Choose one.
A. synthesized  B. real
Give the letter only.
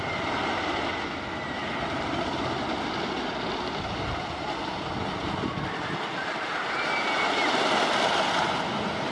B